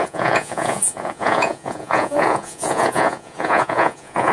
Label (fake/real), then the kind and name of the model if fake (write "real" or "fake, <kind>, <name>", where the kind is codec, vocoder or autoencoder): fake, vocoder, Vocos